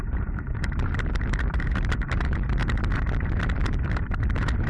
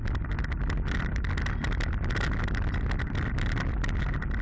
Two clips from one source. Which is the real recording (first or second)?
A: second